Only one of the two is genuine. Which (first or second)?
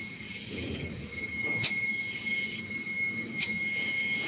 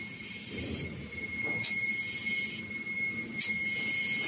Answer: second